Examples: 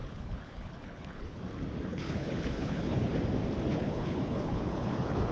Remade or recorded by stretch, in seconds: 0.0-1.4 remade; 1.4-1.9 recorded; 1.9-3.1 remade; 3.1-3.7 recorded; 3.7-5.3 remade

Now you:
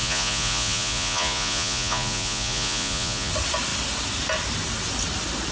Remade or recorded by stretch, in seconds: 0.0-3.3 remade; 3.3-5.5 recorded

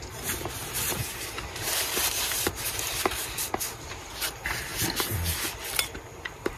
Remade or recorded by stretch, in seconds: 0.0-4.7 remade; 4.7-6.1 recorded; 6.1-6.6 remade

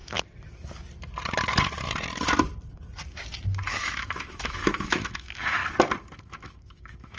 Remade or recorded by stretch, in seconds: 0.0-3.7 recorded; 3.7-5.6 remade; 5.6-6.2 recorded; 6.2-7.2 remade

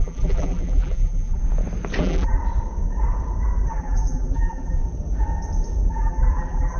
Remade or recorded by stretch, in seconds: 0.0-1.4 remade; 1.4-2.0 recorded; 2.0-2.4 remade; 2.4-3.7 recorded; 3.7-4.8 remade; 4.8-5.9 recorded; 5.9-6.8 remade